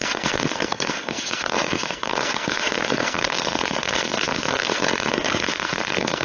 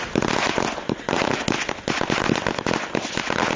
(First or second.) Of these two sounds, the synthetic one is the first